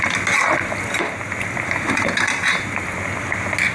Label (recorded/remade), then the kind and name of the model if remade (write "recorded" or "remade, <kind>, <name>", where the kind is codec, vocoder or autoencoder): recorded